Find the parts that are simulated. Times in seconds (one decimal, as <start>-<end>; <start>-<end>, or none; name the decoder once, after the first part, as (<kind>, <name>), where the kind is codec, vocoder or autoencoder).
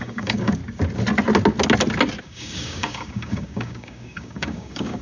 0.0-0.6 (codec, DAC); 2.2-5.0